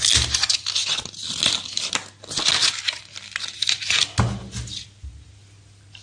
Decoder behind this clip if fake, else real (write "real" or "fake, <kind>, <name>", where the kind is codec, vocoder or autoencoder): real